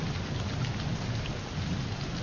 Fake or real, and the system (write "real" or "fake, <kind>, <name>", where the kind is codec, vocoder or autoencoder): real